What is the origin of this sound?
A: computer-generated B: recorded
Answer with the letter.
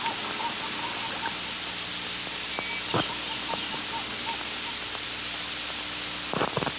B